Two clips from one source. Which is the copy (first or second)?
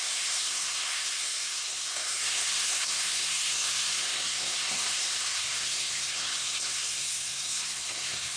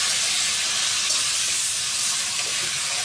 first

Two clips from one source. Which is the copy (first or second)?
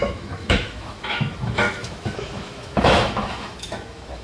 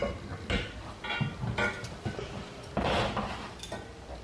first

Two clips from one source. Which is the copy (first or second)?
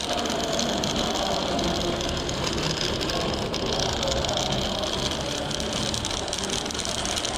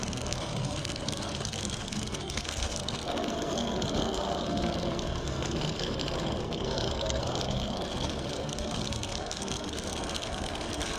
second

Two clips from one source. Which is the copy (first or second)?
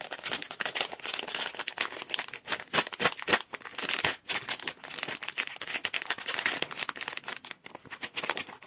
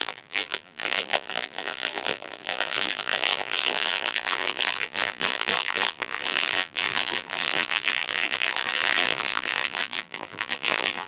second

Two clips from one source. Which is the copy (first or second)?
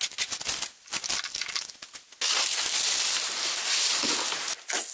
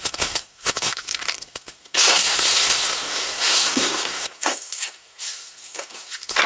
second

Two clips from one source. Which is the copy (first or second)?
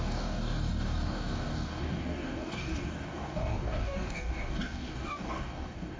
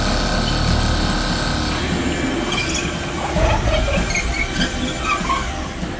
first